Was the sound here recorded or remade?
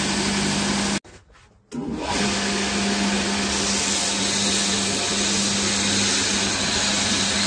recorded